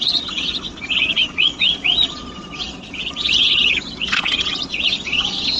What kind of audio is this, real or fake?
fake